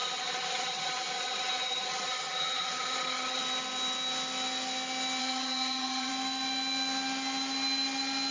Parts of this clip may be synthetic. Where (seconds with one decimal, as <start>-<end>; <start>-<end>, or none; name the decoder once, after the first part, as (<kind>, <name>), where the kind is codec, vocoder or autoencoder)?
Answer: 0.0-3.4 (vocoder, HiFi-GAN); 5.2-6.1